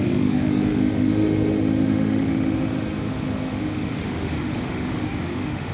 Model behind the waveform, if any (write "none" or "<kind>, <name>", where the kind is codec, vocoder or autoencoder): autoencoder, DAC-VAE